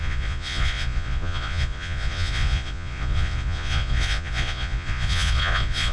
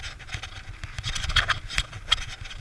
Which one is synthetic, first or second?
first